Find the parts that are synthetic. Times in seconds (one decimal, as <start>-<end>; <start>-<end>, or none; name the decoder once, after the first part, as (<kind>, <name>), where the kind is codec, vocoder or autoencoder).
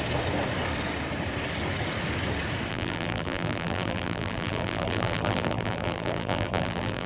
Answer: 2.7-7.1 (vocoder, BigVGAN v2)